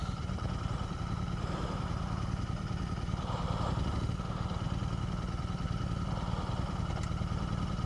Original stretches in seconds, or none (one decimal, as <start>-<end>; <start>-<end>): 1.0-7.9